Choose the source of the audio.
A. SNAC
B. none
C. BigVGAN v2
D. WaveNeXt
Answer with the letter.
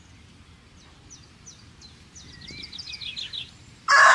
B